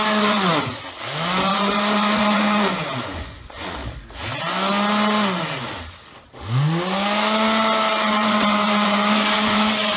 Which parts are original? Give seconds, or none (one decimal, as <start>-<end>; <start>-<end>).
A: 0.7-1.5; 3.8-8.1